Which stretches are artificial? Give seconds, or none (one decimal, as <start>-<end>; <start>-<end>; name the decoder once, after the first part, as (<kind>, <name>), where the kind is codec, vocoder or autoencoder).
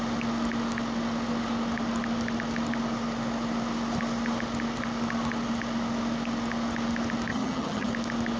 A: 7.3-7.9 (vocoder, HiFi-GAN)